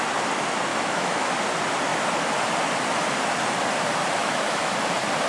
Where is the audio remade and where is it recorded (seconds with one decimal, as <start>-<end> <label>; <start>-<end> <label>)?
0.0-0.7 recorded; 0.7-1.3 remade; 1.3-4.2 recorded; 4.2-4.7 remade; 4.7-5.3 recorded